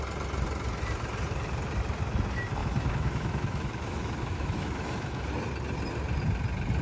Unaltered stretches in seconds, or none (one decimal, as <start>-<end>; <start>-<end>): 0.0-2.6; 5.3-6.8